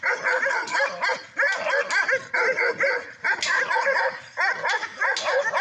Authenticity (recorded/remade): recorded